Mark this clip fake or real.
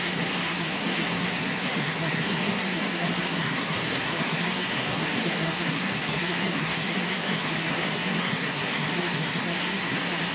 fake